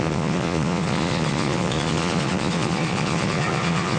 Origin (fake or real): fake